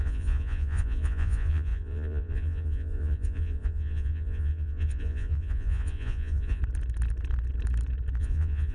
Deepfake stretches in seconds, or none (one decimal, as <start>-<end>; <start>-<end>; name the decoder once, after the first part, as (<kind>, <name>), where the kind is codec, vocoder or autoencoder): 0.0-6.6 (vocoder, Vocos); 8.2-8.7